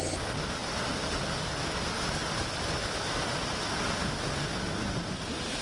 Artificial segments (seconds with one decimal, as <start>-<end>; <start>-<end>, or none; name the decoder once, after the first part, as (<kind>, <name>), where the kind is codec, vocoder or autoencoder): 0.6-1.6 (vocoder, BigVGAN v2)